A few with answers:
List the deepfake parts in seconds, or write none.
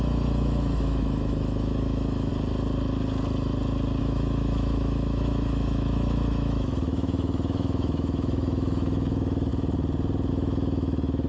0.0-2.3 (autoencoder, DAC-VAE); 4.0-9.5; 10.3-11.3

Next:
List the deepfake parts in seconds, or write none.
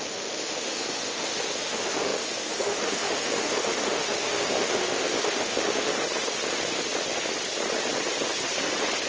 0.0-5.9 (autoencoder, DAC-VAE)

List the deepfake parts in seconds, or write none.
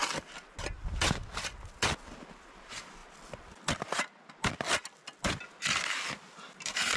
none